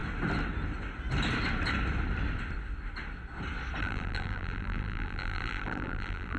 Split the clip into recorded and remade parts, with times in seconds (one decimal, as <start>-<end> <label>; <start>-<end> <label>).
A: 0.0-3.8 recorded; 3.8-6.4 remade